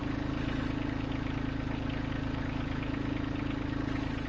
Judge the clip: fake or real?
real